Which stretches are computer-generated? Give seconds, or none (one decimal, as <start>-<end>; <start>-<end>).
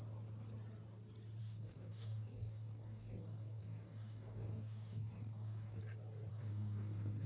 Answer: 1.4-5.8; 6.3-7.3